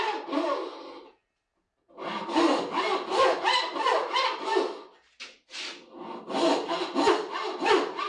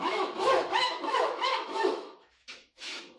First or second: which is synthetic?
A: second